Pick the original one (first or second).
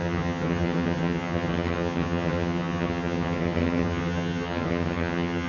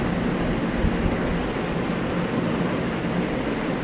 second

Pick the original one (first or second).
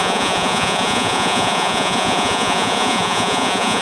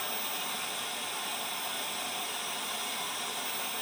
second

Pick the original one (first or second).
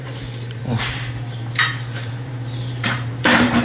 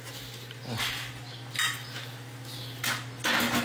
second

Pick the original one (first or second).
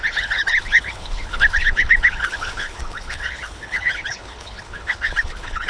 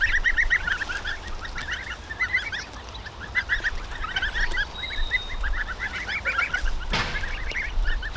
second